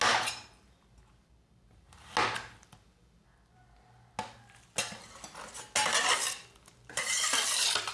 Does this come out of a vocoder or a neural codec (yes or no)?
no